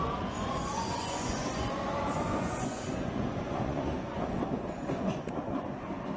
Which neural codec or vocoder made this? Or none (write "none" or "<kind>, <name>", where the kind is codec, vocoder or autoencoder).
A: vocoder, Vocos